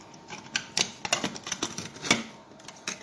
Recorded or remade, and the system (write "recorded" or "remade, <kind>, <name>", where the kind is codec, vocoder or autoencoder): recorded